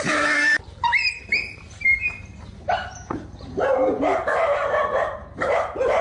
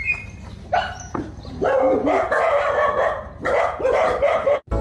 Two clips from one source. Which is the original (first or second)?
second